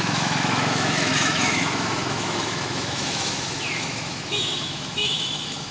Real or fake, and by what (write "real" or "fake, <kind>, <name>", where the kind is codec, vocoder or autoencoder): fake, autoencoder, DAC-VAE